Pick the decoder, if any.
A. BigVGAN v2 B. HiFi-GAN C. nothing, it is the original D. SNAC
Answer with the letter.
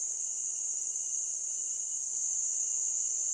C